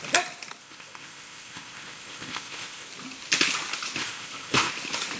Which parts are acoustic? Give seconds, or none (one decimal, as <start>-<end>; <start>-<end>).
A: 0.0-0.6; 2.9-4.0; 4.7-5.2